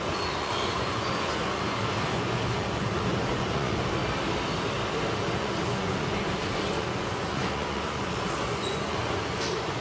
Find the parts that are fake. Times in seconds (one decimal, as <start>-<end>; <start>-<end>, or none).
0.0-4.0; 5.1-9.8

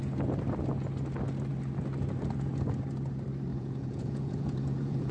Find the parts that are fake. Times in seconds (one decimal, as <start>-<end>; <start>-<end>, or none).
3.5-5.1

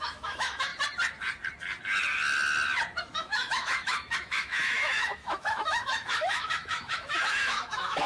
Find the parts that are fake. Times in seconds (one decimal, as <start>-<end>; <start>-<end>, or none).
0.0-0.7; 3.0-8.1

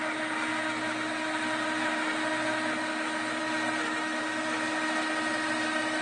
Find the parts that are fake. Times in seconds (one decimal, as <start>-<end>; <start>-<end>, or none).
none

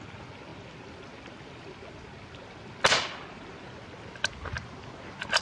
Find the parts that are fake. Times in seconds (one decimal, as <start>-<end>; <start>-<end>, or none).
none

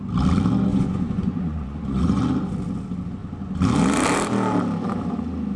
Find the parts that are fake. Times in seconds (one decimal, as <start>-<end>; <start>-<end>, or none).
0.7-2.2